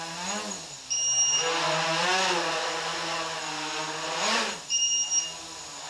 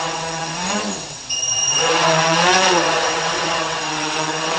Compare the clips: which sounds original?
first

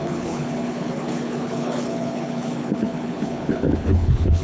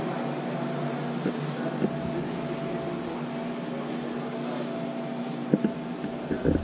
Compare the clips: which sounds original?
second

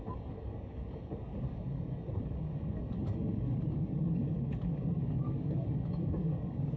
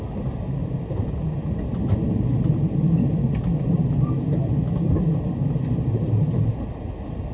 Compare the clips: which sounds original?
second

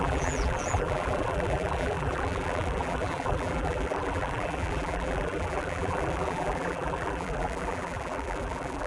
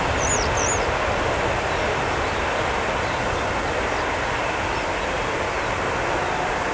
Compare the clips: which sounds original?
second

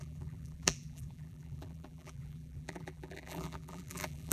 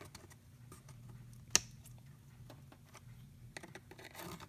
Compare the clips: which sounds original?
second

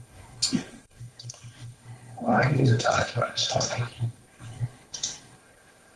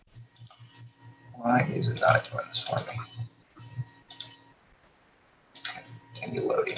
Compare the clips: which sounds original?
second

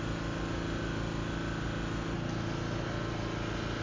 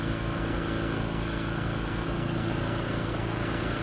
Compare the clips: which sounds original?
first